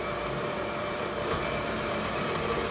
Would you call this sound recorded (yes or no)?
no